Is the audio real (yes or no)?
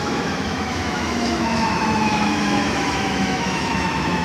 no